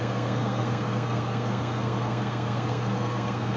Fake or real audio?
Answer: fake